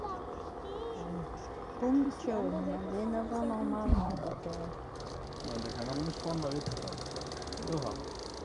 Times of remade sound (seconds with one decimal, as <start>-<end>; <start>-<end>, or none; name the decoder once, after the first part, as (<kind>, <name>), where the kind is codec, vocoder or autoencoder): 3.9-4.4 (codec, SNAC)